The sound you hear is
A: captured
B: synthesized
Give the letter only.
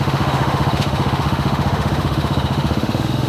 B